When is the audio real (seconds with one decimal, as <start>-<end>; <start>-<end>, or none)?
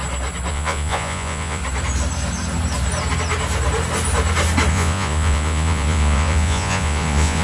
0.0-0.5; 1.6-4.7